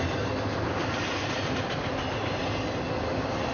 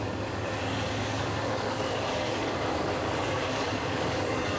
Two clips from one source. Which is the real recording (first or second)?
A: first